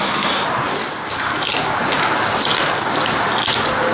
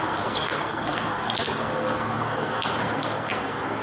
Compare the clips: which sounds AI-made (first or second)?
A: second